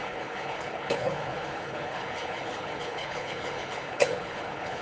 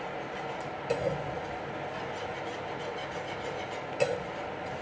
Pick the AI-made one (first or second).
first